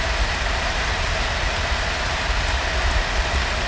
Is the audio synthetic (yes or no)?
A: no